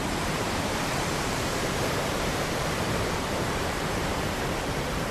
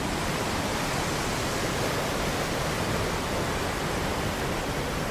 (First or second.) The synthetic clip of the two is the first